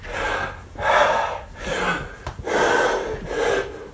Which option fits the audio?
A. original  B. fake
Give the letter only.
A